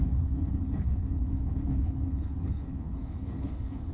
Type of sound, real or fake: fake